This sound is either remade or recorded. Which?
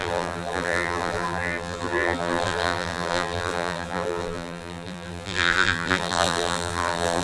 remade